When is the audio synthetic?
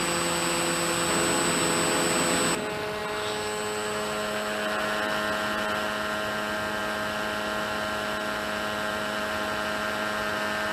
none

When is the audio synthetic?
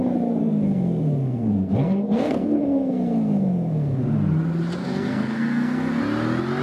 0.4-4.0 (codec, SNAC); 4.8-6.0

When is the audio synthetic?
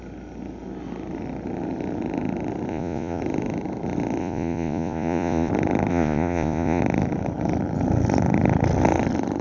2.7-3.2 (vocoder, Vocos); 4.2-5.5; 5.9-6.8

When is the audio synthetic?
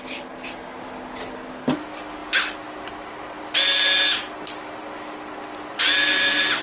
none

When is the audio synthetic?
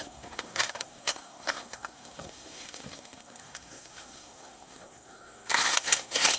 0.0-6.4 (codec, SNAC)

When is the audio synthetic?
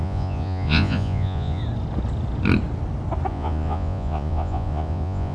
0.0-1.6 (vocoder, Vocos); 3.3-5.3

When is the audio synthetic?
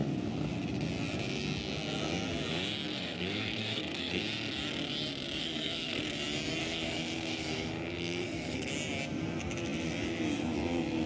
2.9-4.2 (codec, SNAC); 5.4-6.0; 6.6-8.7